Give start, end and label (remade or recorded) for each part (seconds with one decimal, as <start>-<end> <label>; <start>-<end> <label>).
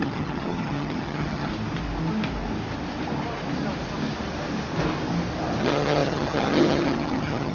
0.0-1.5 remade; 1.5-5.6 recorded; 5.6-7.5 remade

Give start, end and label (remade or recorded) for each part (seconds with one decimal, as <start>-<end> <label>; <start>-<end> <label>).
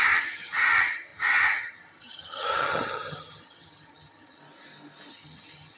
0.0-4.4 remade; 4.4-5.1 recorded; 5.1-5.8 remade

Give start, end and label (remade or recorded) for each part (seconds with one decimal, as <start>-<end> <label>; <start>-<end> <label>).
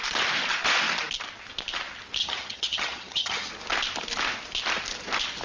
0.0-2.2 recorded; 2.2-3.5 remade; 3.5-5.4 recorded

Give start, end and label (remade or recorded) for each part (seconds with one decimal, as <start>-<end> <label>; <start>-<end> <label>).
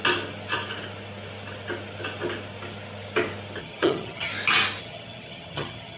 0.0-3.6 recorded; 3.6-4.3 remade; 4.3-4.8 recorded; 4.8-6.0 remade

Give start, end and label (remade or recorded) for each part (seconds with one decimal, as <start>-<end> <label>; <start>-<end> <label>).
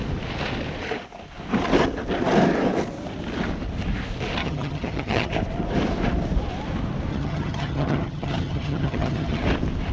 0.0-4.4 recorded; 4.4-5.3 remade; 5.3-7.1 recorded; 7.1-9.4 remade; 9.4-9.9 recorded